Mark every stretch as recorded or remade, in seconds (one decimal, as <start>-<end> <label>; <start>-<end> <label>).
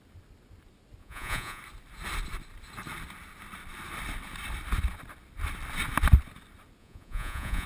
0.0-1.0 recorded; 1.0-1.6 remade; 1.6-6.8 recorded; 6.8-7.7 remade